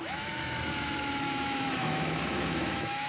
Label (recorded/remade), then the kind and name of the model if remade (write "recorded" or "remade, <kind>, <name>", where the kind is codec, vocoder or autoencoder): remade, autoencoder, DAC-VAE